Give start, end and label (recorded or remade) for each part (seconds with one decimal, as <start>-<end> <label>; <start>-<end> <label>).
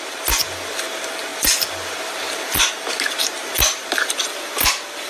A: 0.0-5.1 recorded